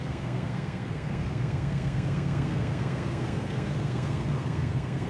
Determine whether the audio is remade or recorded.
remade